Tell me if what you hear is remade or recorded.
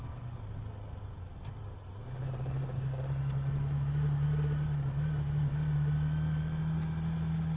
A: recorded